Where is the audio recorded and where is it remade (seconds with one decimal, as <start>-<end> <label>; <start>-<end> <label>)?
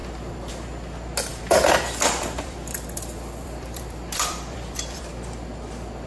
0.0-0.5 remade; 0.5-1.3 recorded; 1.3-5.0 remade; 5.0-6.1 recorded